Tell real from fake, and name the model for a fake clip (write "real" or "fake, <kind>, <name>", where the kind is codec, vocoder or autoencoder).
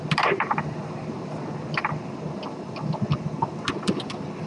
real